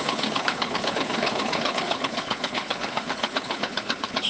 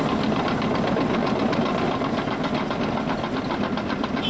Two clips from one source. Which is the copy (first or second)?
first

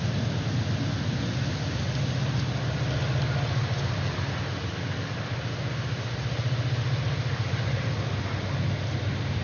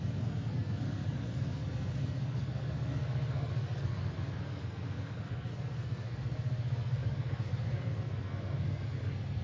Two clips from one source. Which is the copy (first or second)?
second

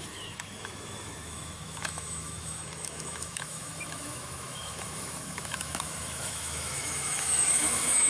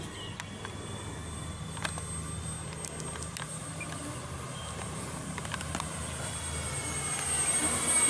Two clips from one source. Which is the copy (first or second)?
first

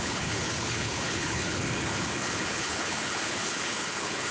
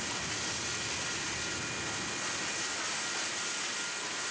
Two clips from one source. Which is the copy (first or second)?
first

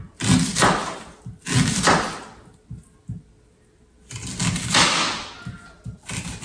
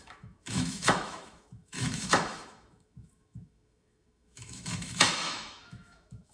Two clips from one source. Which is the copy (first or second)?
second